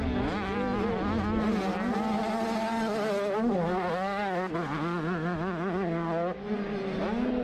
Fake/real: real